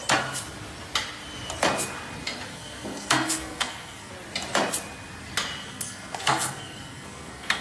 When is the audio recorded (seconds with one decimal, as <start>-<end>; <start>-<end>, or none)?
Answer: 0.0-2.5; 4.1-5.6